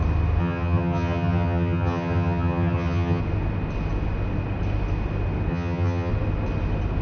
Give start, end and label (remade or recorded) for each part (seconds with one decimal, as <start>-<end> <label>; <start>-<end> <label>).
0.0-0.4 recorded; 0.4-3.2 remade; 3.2-5.5 recorded; 5.5-6.1 remade; 6.1-7.0 recorded